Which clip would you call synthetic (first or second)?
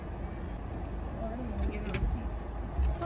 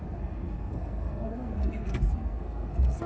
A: second